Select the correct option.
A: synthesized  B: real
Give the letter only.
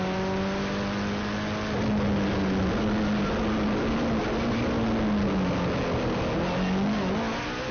B